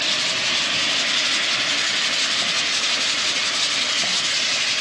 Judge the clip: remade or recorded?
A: recorded